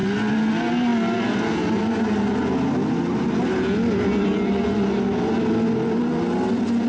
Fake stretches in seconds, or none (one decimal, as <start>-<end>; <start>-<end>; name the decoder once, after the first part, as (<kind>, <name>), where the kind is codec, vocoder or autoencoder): none